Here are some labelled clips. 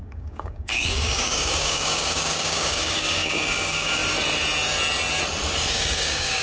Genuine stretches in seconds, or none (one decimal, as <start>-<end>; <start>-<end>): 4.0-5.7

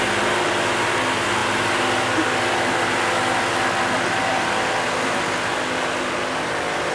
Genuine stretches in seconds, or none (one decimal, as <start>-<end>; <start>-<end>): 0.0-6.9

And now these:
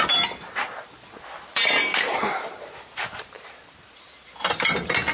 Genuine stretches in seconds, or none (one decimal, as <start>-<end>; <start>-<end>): 0.0-1.5; 4.6-5.1

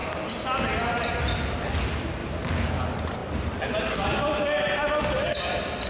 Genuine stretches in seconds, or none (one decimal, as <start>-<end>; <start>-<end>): 0.0-2.2; 2.8-5.9

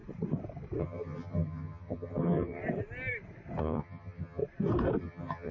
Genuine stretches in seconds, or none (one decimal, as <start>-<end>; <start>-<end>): 0.0-0.8; 2.6-3.6; 4.4-5.0